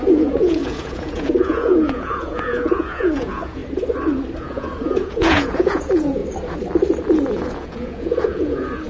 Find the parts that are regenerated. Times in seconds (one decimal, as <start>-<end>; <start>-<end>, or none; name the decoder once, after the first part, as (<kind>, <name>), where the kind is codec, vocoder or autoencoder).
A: 0.0-3.6 (vocoder, Vocos); 4.4-6.2; 7.1-8.9